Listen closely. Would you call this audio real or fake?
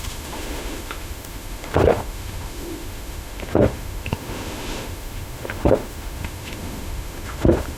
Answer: fake